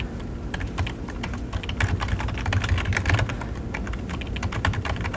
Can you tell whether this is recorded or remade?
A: recorded